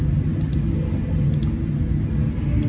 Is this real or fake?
real